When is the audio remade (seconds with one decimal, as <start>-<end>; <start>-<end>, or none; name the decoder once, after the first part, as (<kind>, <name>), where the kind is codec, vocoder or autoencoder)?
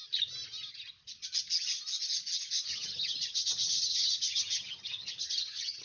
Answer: 2.7-5.8 (vocoder, HiFi-GAN)